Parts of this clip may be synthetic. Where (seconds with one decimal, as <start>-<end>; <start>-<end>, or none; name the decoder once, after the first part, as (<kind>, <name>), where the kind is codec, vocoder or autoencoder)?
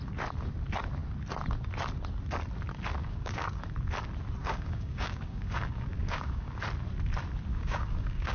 3.0-3.6 (codec, DAC); 4.4-6.6; 7.5-8.3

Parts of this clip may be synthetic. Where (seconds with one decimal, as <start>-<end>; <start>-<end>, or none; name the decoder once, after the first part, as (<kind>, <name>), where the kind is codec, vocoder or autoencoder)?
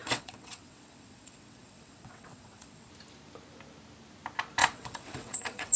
0.0-2.9 (vocoder, WaveNeXt); 4.6-5.8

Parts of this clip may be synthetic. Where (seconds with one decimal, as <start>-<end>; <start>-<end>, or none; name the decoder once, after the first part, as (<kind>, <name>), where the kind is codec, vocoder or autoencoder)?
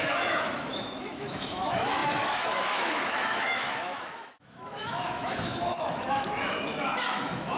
0.0-7.6 (autoencoder, DAC-VAE)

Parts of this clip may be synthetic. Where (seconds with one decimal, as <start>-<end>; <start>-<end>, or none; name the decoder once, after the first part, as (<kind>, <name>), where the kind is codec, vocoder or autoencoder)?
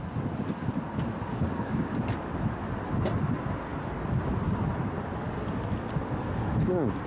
1.3-1.9 (codec, DAC)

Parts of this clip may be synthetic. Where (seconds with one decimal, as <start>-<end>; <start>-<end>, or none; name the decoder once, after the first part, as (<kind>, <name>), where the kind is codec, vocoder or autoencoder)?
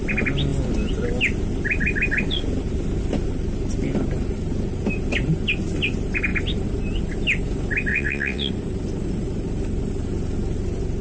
7.9-8.5 (vocoder, WaveNeXt)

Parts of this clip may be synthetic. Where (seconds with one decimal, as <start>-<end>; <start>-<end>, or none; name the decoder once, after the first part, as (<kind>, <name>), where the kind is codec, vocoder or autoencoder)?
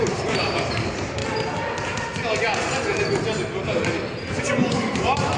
0.0-1.2 (vocoder, BigVGAN v2); 4.4-5.4